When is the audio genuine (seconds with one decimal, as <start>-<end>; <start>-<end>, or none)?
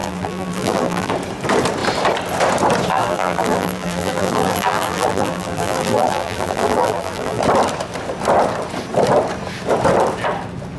1.1-2.9; 7.4-10.8